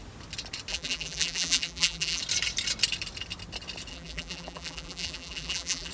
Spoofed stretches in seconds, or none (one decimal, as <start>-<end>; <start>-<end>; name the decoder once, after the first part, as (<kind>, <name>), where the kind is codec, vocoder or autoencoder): 0.7-2.2 (vocoder, BigVGAN v2); 3.9-5.9